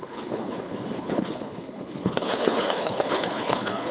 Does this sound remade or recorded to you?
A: remade